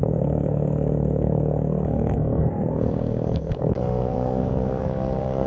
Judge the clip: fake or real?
fake